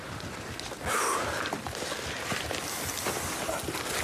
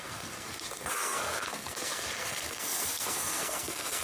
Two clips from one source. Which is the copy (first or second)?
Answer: second